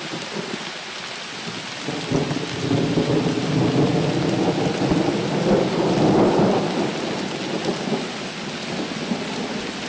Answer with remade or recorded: recorded